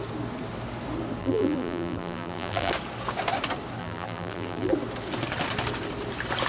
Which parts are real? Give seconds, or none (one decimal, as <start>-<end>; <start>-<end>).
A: 0.0-1.2; 2.7-3.8; 4.7-6.5